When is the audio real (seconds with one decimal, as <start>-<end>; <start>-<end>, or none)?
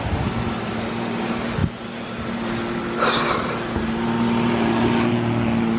0.0-5.8